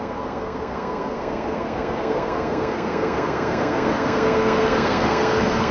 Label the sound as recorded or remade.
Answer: remade